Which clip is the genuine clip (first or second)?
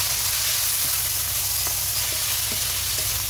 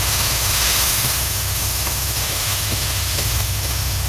first